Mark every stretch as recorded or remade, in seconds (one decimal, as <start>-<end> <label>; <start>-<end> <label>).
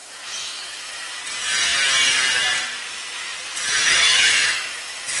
0.0-1.2 remade; 1.2-3.8 recorded; 3.8-5.2 remade